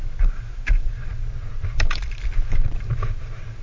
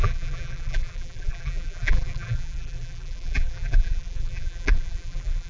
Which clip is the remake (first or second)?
second